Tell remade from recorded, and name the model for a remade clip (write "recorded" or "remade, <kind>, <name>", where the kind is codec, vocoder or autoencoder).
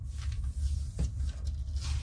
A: recorded